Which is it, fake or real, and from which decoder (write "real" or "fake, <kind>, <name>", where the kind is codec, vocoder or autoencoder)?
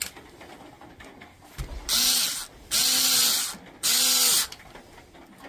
real